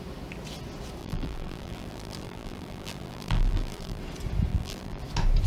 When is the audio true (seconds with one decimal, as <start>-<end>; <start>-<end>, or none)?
0.0-1.0; 4.0-4.5; 5.0-5.5